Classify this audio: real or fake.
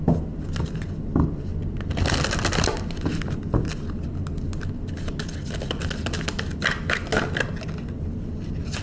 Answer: real